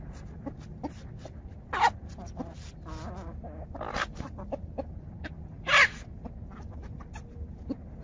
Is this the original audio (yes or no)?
yes